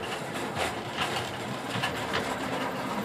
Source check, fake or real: fake